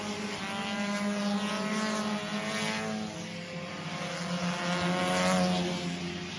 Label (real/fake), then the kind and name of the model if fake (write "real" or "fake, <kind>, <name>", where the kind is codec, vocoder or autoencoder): real